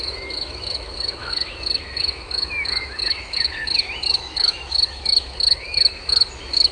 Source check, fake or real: fake